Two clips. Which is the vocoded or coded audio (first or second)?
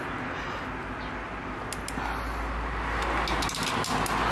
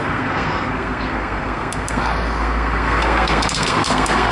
second